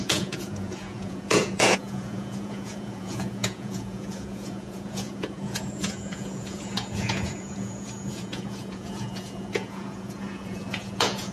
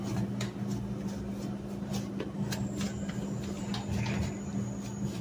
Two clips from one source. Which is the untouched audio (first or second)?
second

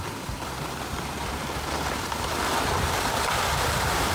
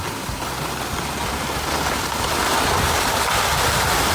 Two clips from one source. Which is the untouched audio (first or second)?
second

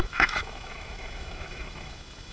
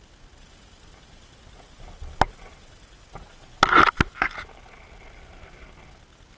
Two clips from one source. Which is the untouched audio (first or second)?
second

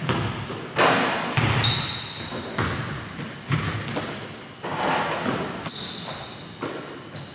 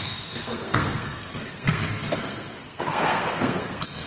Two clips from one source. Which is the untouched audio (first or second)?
first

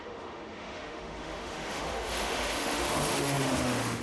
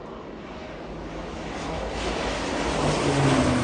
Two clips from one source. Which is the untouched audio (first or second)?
second